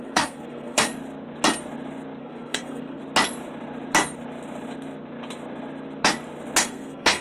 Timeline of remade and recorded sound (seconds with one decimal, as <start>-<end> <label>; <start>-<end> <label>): 0.0-0.9 remade; 0.9-2.2 recorded; 2.2-3.0 remade; 3.0-6.6 recorded; 6.6-7.2 remade